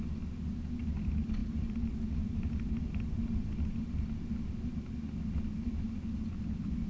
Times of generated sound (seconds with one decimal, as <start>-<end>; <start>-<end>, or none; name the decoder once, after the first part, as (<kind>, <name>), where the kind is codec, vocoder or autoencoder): none

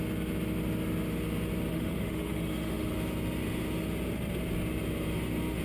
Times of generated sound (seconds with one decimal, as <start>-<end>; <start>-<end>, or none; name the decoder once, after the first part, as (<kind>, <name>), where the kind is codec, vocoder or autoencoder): 1.7-2.9 (autoencoder, DAC-VAE)

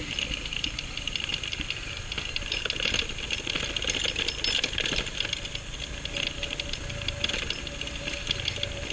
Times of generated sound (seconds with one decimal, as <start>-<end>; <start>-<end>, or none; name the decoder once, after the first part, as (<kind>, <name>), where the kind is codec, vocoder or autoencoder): none